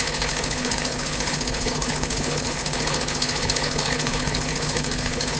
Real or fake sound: fake